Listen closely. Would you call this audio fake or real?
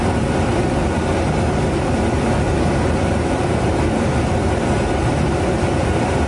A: real